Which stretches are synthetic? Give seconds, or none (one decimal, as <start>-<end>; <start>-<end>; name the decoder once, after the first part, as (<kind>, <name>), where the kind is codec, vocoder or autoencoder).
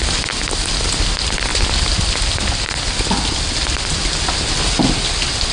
none